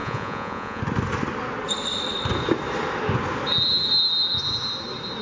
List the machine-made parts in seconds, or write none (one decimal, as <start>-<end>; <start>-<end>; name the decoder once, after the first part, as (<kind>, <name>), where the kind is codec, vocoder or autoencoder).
0.0-0.8 (vocoder, Vocos)